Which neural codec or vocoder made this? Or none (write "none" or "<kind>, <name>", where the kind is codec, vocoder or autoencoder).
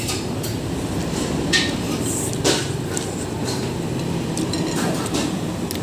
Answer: none